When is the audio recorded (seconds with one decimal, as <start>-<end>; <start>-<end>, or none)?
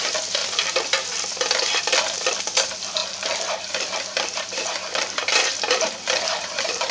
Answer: 3.0-3.7